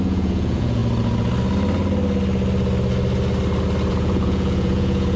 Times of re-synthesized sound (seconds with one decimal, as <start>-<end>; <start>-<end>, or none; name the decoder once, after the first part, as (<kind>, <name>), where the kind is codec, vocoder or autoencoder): 0.0-0.8 (vocoder, Vocos); 3.9-5.2